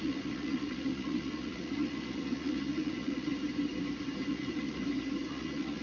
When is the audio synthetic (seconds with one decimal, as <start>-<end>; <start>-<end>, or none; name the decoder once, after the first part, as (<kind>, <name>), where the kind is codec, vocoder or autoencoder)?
0.0-3.3 (vocoder, Vocos); 4.3-4.8; 5.3-5.8